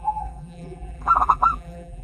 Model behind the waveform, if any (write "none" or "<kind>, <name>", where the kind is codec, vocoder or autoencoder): vocoder, BigVGAN v2